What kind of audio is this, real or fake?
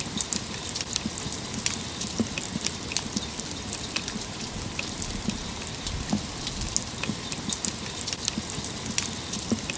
real